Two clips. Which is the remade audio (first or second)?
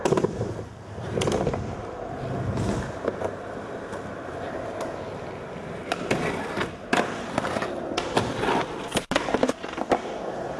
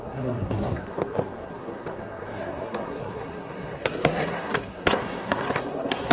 second